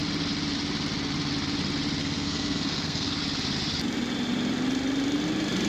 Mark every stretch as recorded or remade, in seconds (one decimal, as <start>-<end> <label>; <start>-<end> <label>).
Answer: 0.0-2.0 recorded; 2.0-3.1 remade; 3.1-5.7 recorded